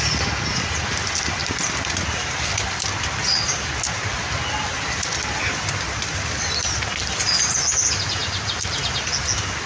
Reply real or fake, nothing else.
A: real